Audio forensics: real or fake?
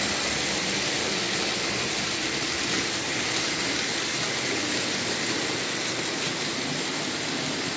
real